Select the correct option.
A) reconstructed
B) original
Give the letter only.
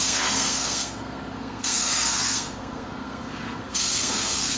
A